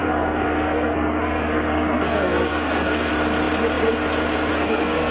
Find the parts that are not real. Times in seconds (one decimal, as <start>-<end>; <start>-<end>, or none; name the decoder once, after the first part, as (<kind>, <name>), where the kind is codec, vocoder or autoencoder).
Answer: 0.0-3.1 (codec, SNAC); 4.5-5.1